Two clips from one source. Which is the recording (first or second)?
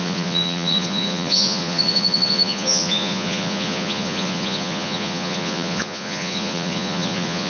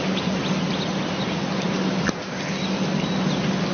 second